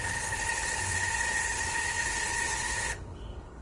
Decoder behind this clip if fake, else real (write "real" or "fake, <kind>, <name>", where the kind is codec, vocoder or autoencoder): fake, codec, HILCodec